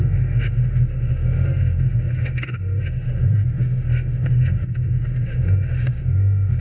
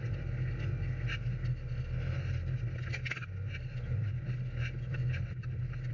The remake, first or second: first